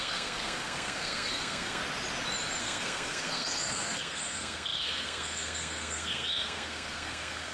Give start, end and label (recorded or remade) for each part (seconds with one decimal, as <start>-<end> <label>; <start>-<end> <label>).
0.0-1.8 remade; 1.8-2.6 recorded; 2.6-7.5 remade